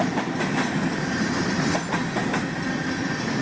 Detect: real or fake real